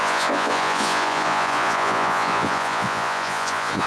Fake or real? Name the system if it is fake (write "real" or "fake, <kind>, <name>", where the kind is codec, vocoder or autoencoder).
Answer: fake, vocoder, Vocos